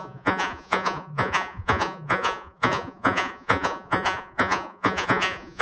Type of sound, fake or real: fake